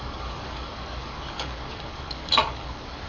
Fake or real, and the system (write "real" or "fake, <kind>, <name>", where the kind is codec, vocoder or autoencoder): fake, codec, DAC